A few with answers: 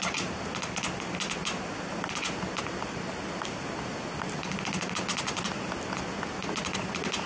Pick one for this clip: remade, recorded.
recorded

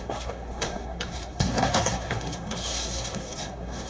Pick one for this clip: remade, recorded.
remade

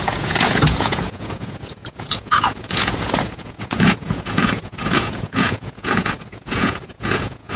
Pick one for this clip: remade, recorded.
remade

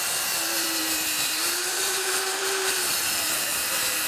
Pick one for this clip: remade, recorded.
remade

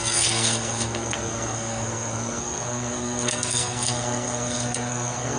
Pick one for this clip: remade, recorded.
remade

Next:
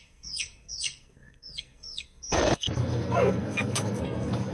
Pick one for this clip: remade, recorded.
remade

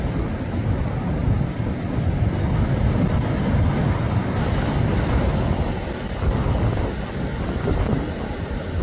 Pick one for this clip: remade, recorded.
recorded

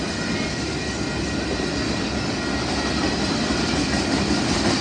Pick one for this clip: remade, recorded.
recorded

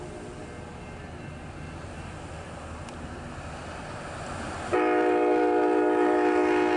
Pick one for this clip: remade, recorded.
recorded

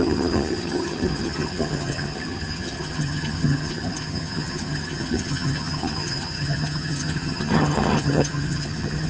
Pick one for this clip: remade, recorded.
remade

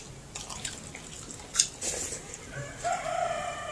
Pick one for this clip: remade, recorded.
recorded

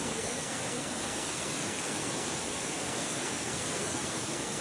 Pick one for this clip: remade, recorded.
remade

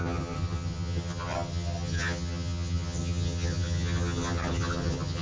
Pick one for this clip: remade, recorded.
remade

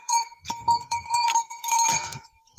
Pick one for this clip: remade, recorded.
remade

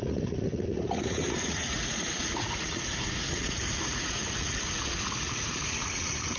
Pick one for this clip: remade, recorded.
remade